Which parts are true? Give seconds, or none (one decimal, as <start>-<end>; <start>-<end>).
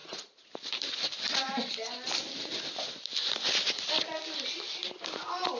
3.4-5.6